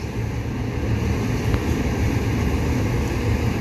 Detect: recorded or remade recorded